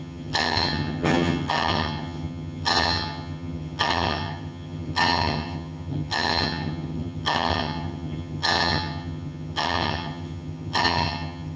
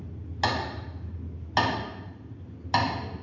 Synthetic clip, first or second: first